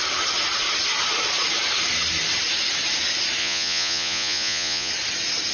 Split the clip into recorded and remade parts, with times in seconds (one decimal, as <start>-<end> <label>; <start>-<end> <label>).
0.0-3.4 recorded; 3.4-4.9 remade; 4.9-5.5 recorded